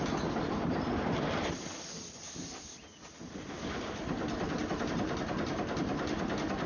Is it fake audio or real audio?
real